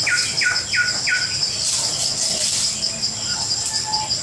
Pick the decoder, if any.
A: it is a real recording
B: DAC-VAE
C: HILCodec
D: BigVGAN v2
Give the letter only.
A